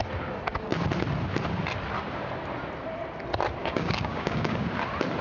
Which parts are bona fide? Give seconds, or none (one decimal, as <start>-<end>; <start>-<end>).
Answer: 0.0-3.6; 4.7-5.2